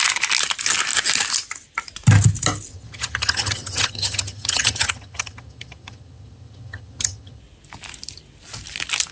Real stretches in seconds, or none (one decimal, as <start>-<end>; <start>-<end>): 0.0-2.7; 7.4-9.1